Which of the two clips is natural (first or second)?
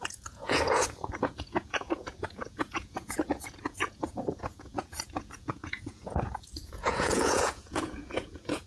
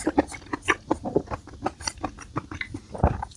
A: second